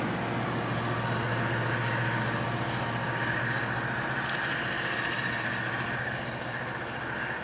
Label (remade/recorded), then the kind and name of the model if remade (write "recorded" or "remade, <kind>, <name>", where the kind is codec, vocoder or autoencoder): recorded